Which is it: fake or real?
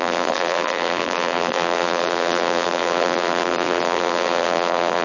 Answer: fake